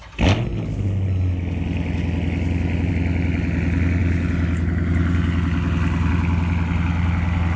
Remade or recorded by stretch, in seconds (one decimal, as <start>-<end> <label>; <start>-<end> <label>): 0.0-7.6 recorded